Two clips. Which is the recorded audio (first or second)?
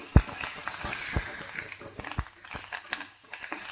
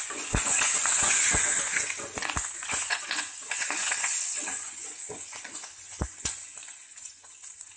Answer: first